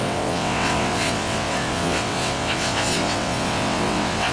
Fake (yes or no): yes